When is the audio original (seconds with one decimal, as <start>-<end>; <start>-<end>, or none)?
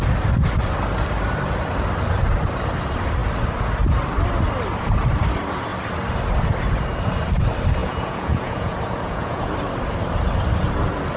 0.0-7.8; 9.5-11.2